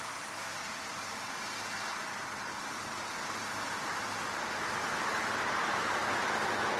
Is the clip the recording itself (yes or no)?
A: yes